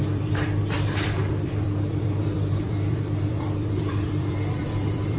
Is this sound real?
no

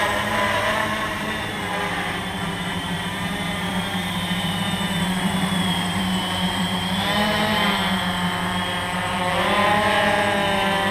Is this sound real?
no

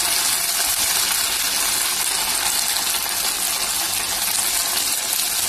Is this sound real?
yes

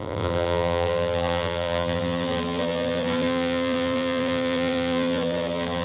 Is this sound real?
no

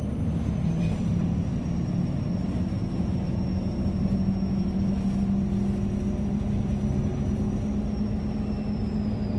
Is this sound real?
yes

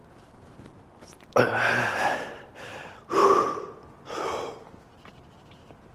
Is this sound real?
yes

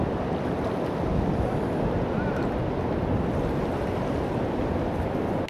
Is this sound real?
yes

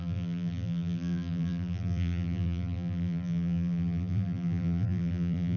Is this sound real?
no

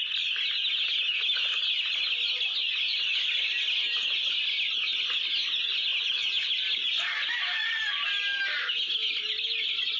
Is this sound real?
yes